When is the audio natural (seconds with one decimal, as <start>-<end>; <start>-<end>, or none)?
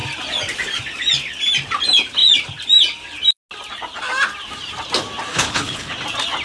0.0-5.3; 5.9-6.4